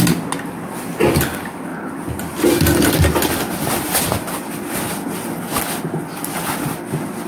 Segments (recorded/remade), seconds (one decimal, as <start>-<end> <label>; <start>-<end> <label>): 0.0-7.3 recorded